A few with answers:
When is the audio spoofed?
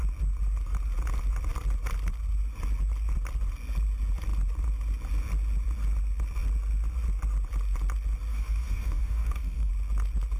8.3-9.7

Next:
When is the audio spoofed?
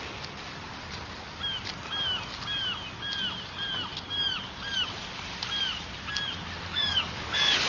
6.7-7.7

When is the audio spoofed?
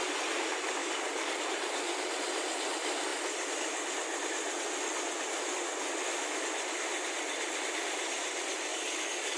0.8-1.4; 8.7-9.4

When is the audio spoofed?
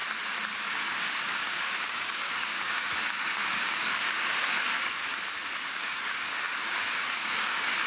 0.8-5.0; 5.7-7.9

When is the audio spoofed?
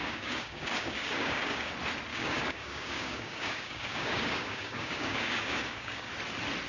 0.0-1.7; 2.1-6.1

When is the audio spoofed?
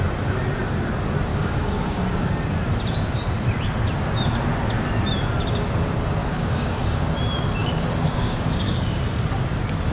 1.3-2.3; 6.2-7.1; 7.6-9.0